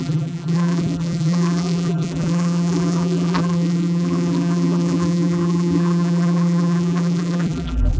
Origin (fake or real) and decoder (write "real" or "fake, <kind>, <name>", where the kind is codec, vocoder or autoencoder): fake, vocoder, BigVGAN v2